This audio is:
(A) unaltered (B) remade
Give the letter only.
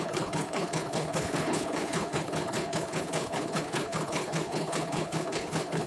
B